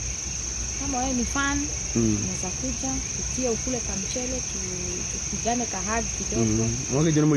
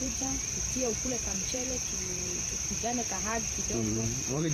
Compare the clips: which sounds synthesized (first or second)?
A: second